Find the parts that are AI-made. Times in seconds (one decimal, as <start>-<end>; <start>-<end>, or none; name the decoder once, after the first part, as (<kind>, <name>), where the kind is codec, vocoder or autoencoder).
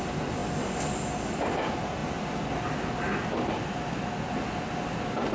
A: none